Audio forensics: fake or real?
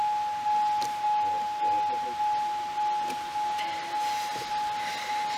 real